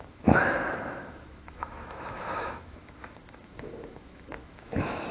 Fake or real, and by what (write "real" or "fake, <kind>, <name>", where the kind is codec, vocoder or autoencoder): fake, autoencoder, DAC-VAE